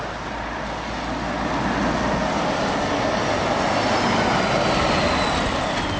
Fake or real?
real